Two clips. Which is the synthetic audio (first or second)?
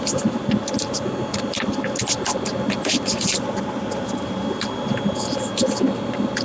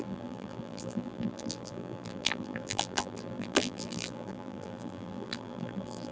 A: second